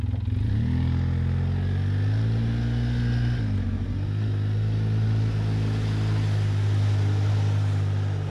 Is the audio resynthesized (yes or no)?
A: no